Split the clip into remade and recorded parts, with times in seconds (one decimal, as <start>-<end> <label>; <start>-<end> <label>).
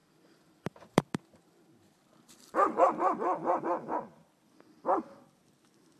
0.0-3.6 remade; 3.6-4.2 recorded; 4.2-5.4 remade; 5.4-6.0 recorded